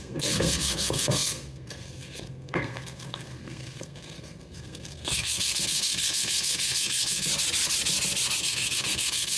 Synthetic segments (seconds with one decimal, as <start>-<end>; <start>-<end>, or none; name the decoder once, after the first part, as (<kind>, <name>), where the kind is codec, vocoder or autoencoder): 0.0-7.3 (codec, SNAC); 8.4-9.4